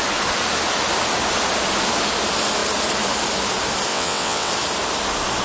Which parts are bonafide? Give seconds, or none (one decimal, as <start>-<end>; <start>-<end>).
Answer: 0.0-3.9; 4.5-5.4